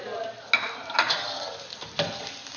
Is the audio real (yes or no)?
yes